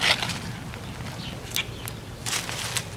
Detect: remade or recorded recorded